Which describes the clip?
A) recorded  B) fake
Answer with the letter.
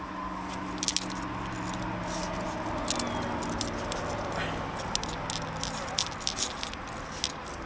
A